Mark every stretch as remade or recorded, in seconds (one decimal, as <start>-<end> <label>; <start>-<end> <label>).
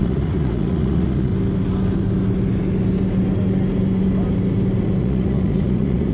0.0-1.3 remade; 1.3-5.0 recorded; 5.0-6.1 remade